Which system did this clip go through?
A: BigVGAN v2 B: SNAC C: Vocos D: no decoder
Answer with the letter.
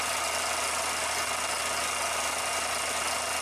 D